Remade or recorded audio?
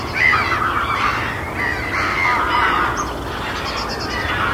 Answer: recorded